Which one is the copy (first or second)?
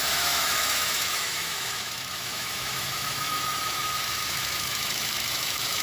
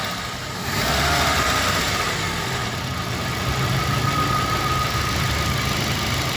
first